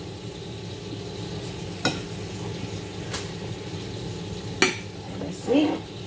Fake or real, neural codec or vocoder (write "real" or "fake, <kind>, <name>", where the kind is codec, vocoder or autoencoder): real